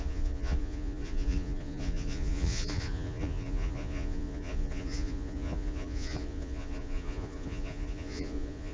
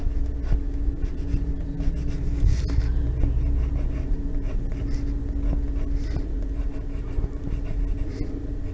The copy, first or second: first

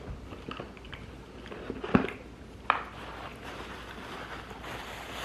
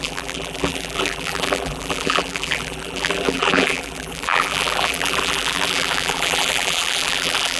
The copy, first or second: second